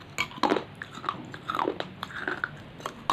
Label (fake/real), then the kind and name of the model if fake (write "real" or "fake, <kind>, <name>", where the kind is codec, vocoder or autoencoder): real